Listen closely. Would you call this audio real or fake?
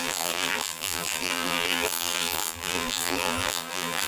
fake